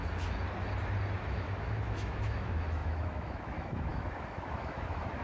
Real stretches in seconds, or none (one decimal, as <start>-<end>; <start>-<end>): 0.0-1.2